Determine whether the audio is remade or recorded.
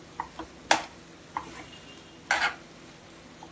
recorded